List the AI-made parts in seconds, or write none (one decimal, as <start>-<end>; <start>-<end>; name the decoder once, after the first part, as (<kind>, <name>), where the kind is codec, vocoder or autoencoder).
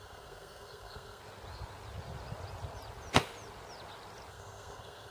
0.0-1.2 (codec, SNAC); 4.3-5.1